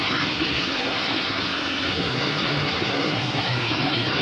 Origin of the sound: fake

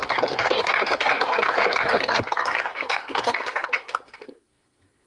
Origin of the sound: fake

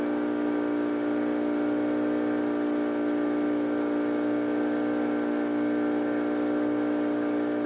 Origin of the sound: real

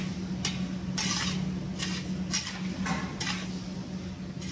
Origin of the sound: real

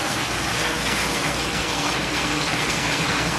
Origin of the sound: fake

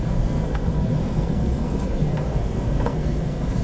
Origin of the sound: fake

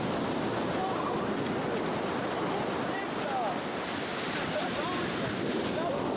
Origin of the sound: real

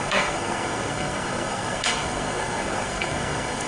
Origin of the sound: fake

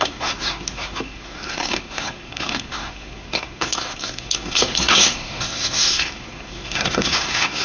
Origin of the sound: fake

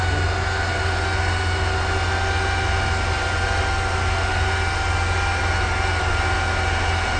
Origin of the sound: real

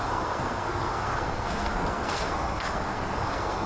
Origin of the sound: fake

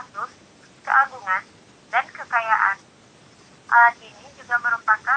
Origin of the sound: real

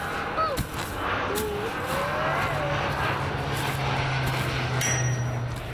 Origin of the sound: real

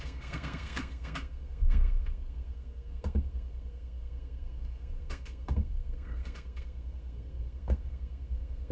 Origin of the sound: fake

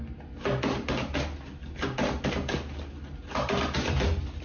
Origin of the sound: real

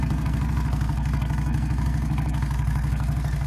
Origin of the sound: fake